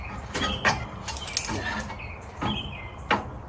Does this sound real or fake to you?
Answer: real